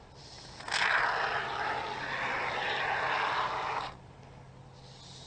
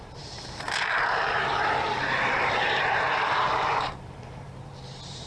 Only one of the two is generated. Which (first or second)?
second